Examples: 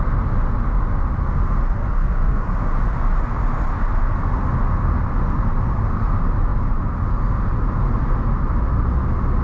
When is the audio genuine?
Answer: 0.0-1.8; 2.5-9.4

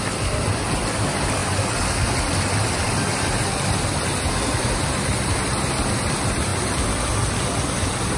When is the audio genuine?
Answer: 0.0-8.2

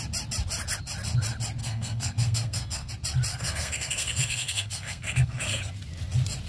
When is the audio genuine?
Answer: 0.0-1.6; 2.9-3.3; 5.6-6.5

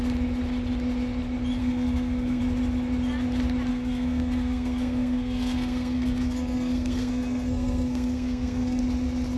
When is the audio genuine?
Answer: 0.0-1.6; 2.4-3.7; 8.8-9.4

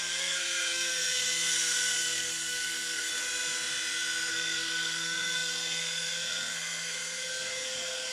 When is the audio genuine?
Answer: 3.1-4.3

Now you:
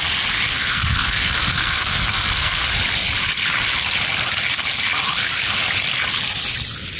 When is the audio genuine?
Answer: 0.0-0.5; 2.6-7.0

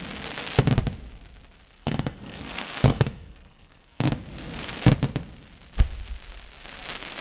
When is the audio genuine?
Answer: 0.0-1.8; 4.1-7.2

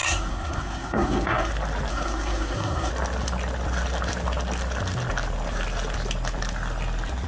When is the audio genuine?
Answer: 1.5-1.9; 2.9-7.3